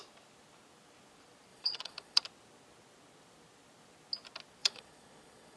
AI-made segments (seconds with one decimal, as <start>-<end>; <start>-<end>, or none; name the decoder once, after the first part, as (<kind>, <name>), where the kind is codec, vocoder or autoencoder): 1.5-2.2 (vocoder, Vocos); 4.6-5.6